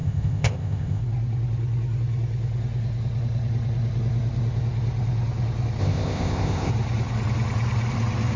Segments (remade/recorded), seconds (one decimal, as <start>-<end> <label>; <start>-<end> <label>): 0.0-1.0 remade; 1.0-5.8 recorded; 5.8-6.7 remade; 6.7-8.4 recorded